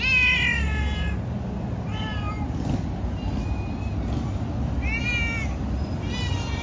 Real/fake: real